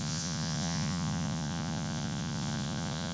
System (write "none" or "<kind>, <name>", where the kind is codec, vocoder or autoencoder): vocoder, Vocos